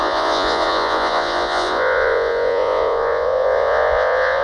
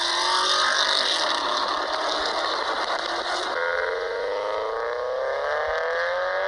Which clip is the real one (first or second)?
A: second